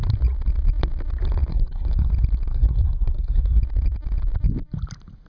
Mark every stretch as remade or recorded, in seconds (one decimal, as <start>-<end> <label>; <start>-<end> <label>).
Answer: 0.0-1.5 recorded; 1.5-2.1 remade; 2.1-2.5 recorded; 2.5-3.6 remade; 3.6-5.3 recorded